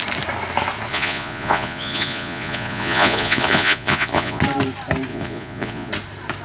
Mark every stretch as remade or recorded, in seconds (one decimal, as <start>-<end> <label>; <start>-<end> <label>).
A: 0.0-0.9 recorded; 0.9-4.4 remade; 4.4-5.1 recorded; 5.1-5.9 remade; 5.9-6.4 recorded